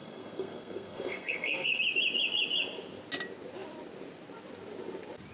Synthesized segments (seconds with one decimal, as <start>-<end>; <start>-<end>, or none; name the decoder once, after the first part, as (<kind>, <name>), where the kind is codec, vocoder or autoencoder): 0.0-1.8 (codec, SNAC)